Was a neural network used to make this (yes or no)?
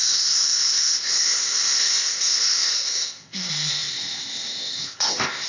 yes